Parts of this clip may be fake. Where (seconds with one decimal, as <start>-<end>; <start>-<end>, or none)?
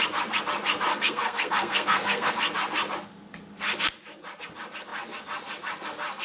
0.9-2.3